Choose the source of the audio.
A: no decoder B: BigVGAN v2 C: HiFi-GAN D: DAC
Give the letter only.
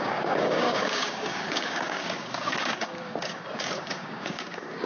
D